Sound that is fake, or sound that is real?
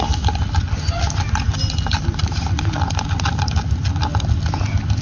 real